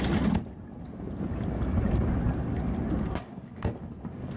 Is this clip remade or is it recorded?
recorded